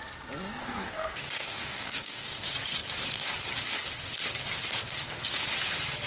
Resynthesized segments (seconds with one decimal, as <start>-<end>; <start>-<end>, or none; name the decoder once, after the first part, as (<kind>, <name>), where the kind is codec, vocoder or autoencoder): 0.6-2.4 (codec, DAC)